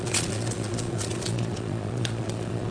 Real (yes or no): no